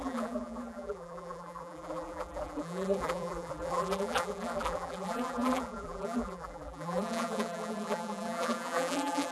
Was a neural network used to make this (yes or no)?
yes